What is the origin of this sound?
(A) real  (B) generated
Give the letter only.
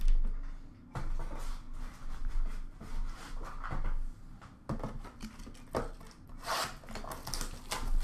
A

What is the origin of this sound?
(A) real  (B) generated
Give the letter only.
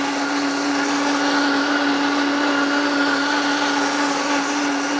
A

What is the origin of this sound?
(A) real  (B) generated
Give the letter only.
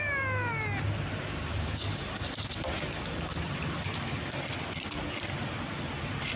A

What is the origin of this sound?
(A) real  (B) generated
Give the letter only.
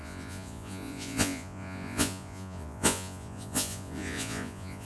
B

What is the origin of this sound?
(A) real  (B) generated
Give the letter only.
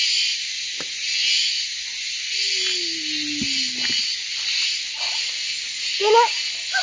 A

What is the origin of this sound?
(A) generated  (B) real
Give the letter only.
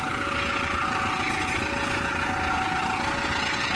A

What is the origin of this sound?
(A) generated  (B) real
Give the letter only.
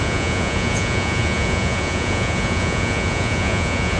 A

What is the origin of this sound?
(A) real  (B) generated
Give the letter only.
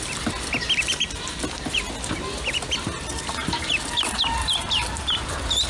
A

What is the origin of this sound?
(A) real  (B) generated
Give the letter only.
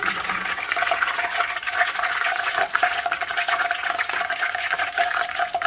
B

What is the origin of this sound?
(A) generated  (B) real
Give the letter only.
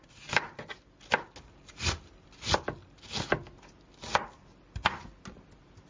B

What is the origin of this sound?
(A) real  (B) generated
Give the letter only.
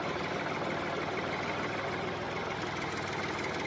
A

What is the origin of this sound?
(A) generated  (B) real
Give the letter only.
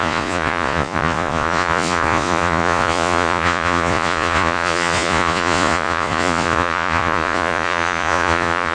A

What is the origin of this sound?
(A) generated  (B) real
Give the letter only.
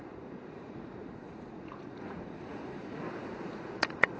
A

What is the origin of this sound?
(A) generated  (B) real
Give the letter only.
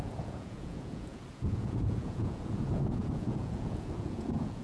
A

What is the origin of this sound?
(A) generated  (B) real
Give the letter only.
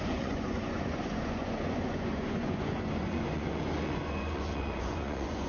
A